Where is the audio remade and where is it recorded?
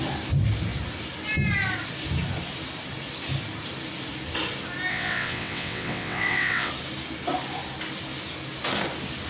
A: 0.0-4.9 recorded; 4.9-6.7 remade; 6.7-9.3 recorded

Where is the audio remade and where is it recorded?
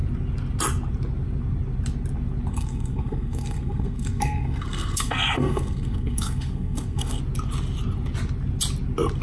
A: 0.0-2.5 recorded; 2.5-7.2 remade; 7.2-9.2 recorded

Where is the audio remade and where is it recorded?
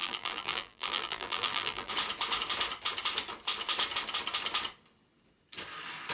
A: 0.0-1.9 remade; 1.9-6.1 recorded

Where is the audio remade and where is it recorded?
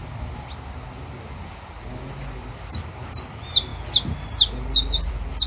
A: 0.0-5.5 recorded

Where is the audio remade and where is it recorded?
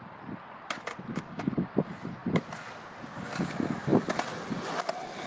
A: 0.0-1.1 recorded; 1.1-1.7 remade; 1.7-5.3 recorded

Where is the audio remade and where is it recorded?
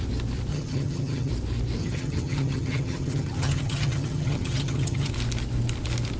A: 0.0-0.5 recorded; 0.5-1.3 remade; 1.3-1.8 recorded; 1.8-5.1 remade; 5.1-6.2 recorded